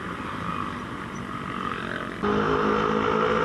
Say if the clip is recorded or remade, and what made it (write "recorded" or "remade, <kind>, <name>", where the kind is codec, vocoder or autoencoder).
recorded